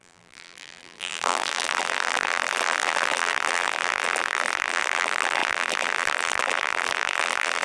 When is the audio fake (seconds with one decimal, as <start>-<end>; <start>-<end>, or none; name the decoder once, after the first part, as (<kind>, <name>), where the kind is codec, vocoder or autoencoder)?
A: 0.0-7.6 (vocoder, BigVGAN v2)